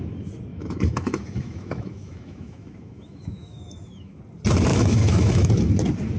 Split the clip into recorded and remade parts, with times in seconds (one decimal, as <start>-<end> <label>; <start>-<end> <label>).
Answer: 0.0-0.5 recorded; 0.5-4.2 remade; 4.2-4.7 recorded; 4.7-5.5 remade; 5.5-6.2 recorded